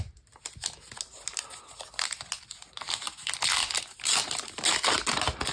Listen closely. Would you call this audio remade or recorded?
recorded